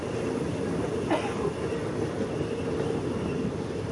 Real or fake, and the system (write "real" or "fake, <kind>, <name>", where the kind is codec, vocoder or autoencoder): real